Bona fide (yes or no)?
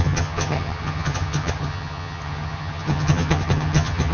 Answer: no